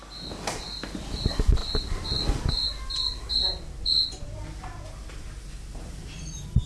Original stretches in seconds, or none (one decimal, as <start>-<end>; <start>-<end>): 0.0-6.7